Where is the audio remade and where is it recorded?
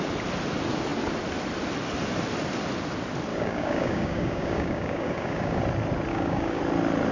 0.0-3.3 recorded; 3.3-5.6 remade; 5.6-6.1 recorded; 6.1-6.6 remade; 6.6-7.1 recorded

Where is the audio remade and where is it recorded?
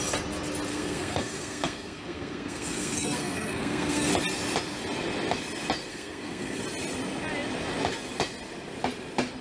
0.0-0.7 recorded; 0.7-4.1 remade; 4.1-5.9 recorded; 5.9-6.6 remade; 6.6-9.4 recorded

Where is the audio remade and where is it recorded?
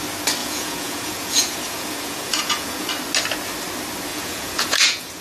0.0-0.4 recorded; 0.4-2.9 remade; 2.9-4.1 recorded; 4.1-5.2 remade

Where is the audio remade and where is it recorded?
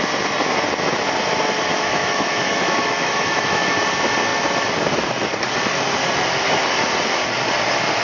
0.0-1.7 recorded; 1.7-3.8 remade; 3.8-8.0 recorded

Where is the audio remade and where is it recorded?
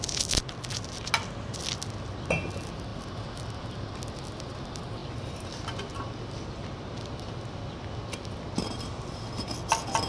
0.0-10.1 recorded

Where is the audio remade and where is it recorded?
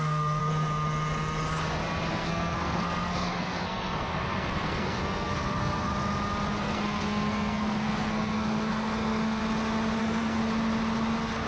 0.0-0.4 remade; 0.4-2.1 recorded; 2.1-5.9 remade; 5.9-6.6 recorded; 6.6-9.4 remade; 9.4-10.0 recorded; 10.0-10.4 remade; 10.4-11.5 recorded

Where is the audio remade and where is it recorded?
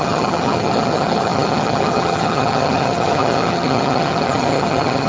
0.0-5.1 remade